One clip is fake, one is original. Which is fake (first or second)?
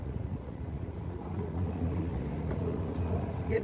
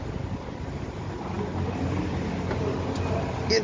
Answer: first